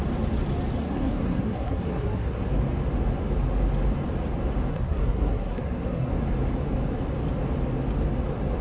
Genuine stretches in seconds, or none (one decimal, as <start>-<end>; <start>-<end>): 0.0-0.8; 2.4-4.7; 6.1-8.6